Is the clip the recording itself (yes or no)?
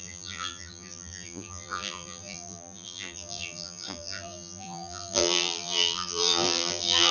no